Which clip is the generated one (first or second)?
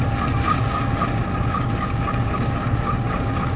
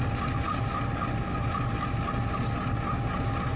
first